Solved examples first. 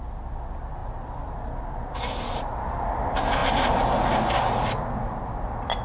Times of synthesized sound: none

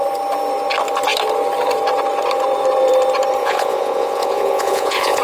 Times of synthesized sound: 3.4-5.2 (vocoder, Vocos)